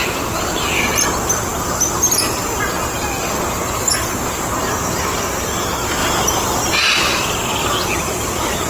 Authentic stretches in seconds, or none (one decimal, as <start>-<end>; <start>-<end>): none